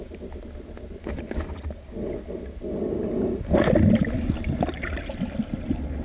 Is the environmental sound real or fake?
real